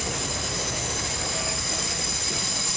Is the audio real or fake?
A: real